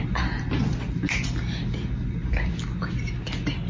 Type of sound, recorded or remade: recorded